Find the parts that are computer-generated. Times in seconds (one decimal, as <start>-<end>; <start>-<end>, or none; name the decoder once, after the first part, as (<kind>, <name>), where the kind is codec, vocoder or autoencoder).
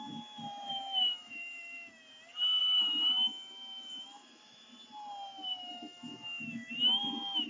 0.0-2.0 (autoencoder, DAC-VAE); 2.6-4.7; 5.7-7.5